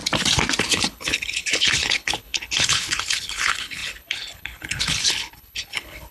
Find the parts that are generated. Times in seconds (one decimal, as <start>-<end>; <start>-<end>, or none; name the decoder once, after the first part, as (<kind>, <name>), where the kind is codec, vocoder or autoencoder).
0.6-6.1 (codec, HILCodec)